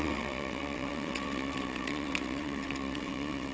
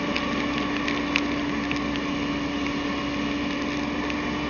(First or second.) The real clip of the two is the second